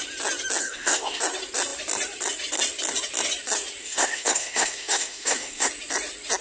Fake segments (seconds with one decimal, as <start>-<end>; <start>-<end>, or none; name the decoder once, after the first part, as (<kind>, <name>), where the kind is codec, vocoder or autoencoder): 0.6-1.2 (codec, SNAC); 3.8-5.7